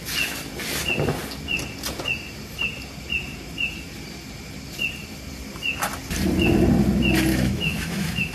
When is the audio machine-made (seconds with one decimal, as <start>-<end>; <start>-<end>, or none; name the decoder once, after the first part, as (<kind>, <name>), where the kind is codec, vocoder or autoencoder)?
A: 7.3-8.3 (autoencoder, DAC-VAE)